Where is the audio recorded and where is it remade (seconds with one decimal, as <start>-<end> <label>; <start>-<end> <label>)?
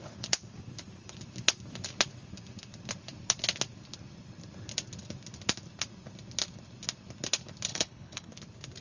0.0-7.7 recorded; 7.7-8.3 remade; 8.3-8.8 recorded